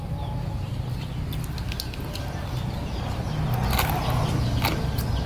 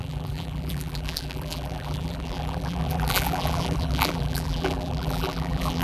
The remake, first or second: second